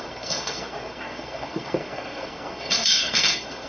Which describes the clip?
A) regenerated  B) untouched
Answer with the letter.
A